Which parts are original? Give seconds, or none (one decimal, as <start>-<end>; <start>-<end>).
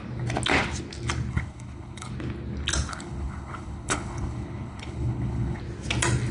0.0-1.3; 2.1-2.9; 5.6-6.3